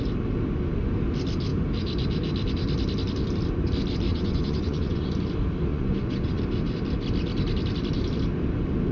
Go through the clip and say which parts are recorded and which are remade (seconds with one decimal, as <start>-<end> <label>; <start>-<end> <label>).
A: 0.0-4.1 recorded; 4.1-5.1 remade; 5.1-5.7 recorded; 5.7-6.4 remade; 6.4-8.9 recorded

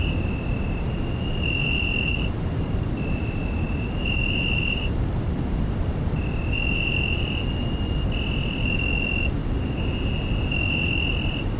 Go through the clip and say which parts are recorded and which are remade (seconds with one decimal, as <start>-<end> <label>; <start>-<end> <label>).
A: 0.0-2.1 recorded; 2.1-5.3 remade; 5.3-11.6 recorded

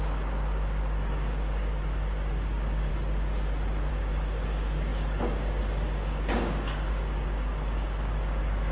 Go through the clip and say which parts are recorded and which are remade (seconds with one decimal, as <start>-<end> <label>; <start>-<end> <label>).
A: 0.0-2.9 remade; 2.9-3.9 recorded; 3.9-8.7 remade